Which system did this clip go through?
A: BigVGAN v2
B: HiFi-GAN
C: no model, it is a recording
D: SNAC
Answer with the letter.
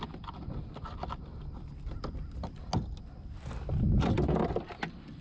C